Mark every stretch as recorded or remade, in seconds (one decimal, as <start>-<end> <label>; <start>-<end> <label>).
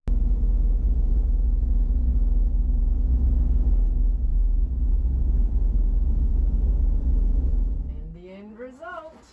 0.0-9.3 recorded